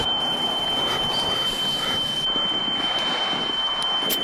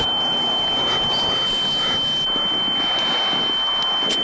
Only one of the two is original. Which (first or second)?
second